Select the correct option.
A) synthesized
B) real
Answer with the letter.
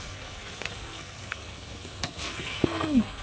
A